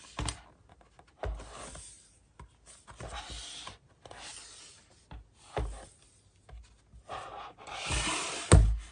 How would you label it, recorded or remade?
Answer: recorded